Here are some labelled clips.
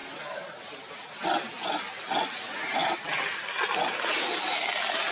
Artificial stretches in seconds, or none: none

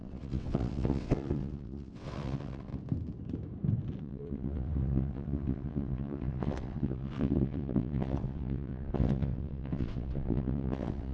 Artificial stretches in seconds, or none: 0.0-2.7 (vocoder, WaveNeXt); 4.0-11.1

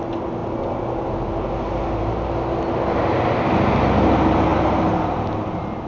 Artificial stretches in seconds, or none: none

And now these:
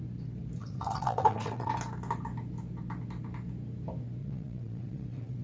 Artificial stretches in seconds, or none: 0.6-1.7 (vocoder, WaveNeXt); 4.2-5.4

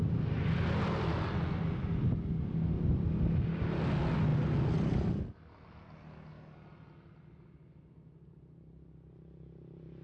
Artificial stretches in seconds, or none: none

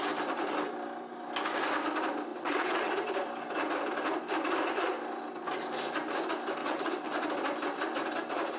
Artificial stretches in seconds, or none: 2.3-2.9 (vocoder, WaveNeXt); 6.6-7.2